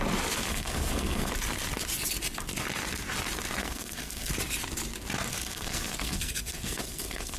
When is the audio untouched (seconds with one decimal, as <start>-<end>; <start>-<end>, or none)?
0.0-0.5; 1.3-3.6; 4.3-5.3